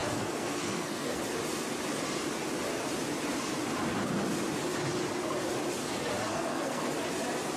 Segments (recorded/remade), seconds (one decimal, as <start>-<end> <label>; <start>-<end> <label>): 0.0-1.2 remade; 1.2-6.3 recorded; 6.3-6.9 remade; 6.9-7.6 recorded